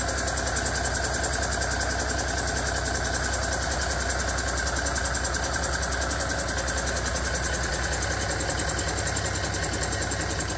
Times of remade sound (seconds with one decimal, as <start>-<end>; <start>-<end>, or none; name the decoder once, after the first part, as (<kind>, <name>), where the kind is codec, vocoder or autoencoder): none

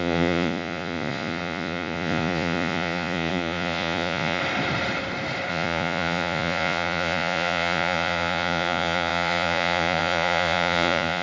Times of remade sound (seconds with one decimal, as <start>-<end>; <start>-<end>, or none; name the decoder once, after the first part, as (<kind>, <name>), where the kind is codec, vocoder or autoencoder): 0.0-4.4 (vocoder, Vocos); 5.5-11.2

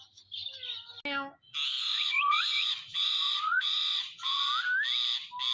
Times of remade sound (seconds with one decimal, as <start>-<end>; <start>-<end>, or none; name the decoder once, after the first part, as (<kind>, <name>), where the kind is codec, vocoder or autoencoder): 1.8-4.5 (vocoder, Vocos)

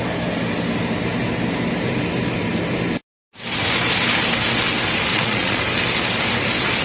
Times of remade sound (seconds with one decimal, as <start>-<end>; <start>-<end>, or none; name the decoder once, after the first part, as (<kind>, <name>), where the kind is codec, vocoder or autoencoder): 5.1-5.6 (vocoder, Vocos)

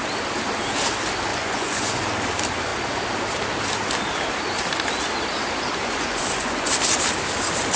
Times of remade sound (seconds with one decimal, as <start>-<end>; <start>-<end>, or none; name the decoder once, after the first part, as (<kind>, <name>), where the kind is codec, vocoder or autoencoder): 1.3-2.0 (vocoder, Vocos); 5.8-6.7

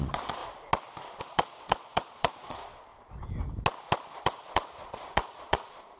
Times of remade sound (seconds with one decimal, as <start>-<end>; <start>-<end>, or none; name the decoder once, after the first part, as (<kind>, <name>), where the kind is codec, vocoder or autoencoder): 0.0-0.4 (vocoder, Vocos); 1.2-2.9; 4.2-6.0

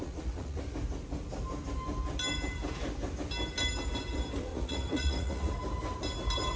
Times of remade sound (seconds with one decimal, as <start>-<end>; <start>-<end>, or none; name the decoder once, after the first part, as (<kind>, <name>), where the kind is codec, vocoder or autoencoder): 0.0-0.6 (vocoder, Vocos); 4.5-5.5

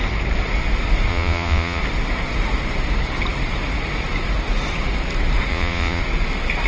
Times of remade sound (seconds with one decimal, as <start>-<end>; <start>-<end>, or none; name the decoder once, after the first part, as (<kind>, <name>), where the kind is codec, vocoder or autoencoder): 1.1-1.8 (vocoder, Vocos); 5.5-6.0